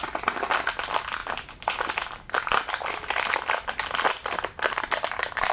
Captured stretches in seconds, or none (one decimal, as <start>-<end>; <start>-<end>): 0.0-1.2; 1.7-4.2; 5.1-5.5